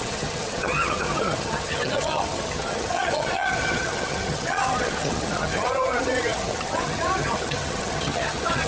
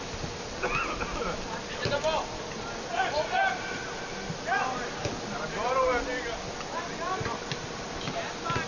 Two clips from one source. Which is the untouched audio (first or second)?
second